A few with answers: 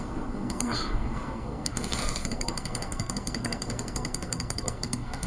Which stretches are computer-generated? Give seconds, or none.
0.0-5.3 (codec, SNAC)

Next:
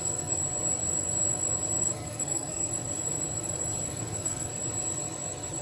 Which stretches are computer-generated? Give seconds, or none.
0.0-0.4 (codec, SNAC); 1.8-2.7; 3.9-4.5

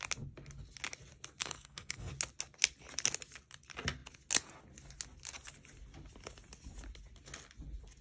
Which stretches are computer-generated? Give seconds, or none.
1.4-2.1 (codec, SNAC)

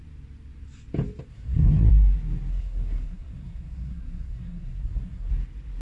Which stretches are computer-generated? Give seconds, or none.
1.3-1.9 (codec, SNAC); 2.5-5.3

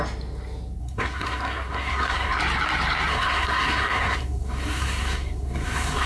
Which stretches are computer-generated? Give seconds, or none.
0.8-2.4 (codec, SNAC); 3.1-6.1